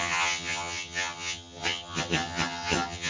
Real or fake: fake